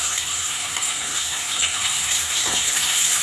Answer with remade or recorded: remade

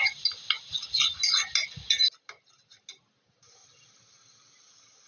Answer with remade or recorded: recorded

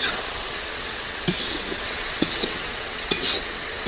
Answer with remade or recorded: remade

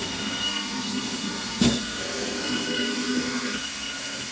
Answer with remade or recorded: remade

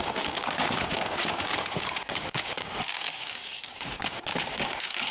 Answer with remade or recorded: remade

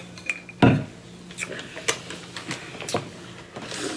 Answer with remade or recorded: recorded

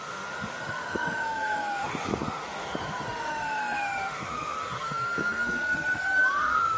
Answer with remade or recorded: remade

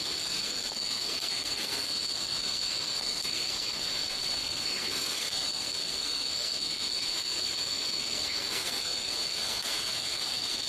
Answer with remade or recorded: remade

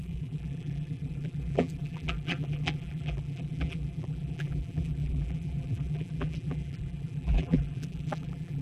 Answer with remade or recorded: remade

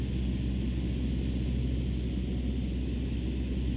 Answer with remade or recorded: recorded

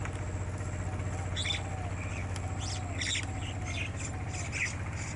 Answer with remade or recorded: recorded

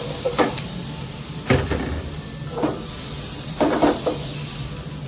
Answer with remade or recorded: remade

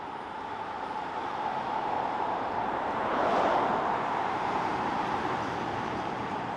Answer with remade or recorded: remade